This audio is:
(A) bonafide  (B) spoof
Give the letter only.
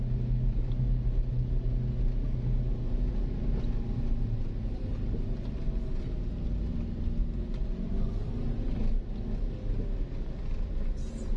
A